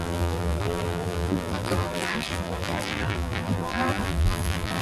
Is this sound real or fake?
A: fake